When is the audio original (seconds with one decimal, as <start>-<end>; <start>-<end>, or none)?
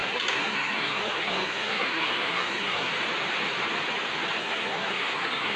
2.9-4.4